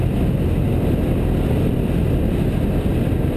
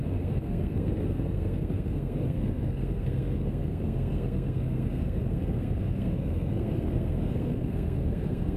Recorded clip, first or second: first